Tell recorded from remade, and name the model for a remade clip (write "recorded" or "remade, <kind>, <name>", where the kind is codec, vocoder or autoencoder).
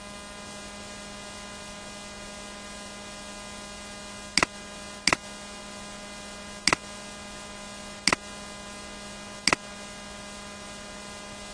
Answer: recorded